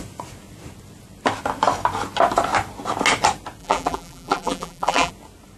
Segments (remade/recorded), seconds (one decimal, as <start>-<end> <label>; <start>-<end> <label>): 0.0-3.6 recorded; 3.6-5.1 remade; 5.1-5.6 recorded